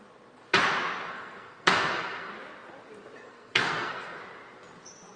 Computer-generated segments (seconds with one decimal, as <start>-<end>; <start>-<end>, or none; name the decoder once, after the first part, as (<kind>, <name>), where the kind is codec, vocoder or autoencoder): 1.1-2.3 (codec, SNAC); 3.3-4.2